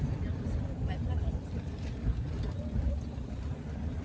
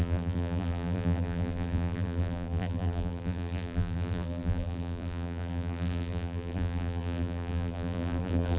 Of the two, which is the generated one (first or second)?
second